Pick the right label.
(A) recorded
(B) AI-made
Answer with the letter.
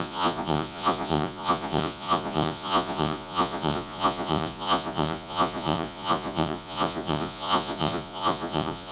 B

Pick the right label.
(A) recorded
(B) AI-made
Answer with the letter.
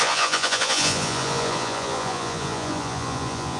B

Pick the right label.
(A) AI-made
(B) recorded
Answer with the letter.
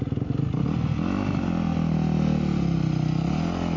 B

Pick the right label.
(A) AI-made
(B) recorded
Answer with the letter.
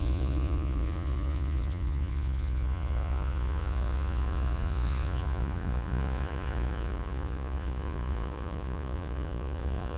A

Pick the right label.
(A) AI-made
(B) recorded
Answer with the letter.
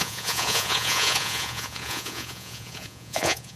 A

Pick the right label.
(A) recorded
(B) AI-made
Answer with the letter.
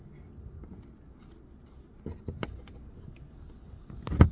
A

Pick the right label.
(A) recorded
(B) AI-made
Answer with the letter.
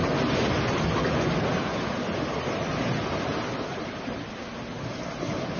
A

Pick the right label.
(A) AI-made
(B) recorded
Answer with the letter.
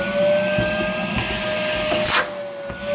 B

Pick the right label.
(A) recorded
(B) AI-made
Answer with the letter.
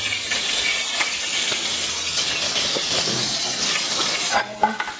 A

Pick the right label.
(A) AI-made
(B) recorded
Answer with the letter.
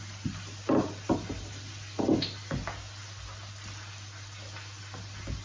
B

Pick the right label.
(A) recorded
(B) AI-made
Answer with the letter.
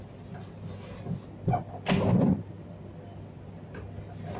A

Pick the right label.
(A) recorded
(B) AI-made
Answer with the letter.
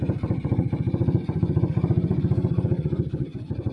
B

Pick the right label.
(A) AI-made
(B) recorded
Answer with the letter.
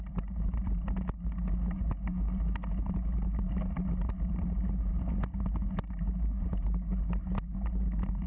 B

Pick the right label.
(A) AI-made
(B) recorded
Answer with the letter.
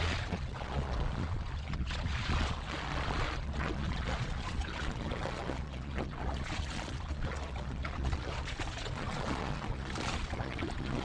A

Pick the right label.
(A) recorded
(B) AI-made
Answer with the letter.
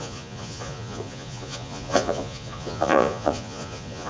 B